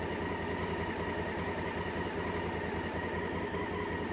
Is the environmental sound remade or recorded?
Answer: recorded